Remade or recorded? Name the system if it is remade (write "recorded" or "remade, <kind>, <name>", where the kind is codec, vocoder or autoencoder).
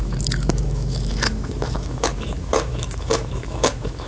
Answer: remade, autoencoder, DAC-VAE